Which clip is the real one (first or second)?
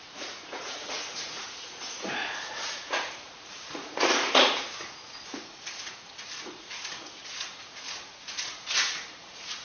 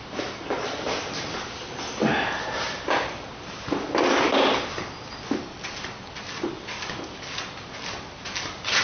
second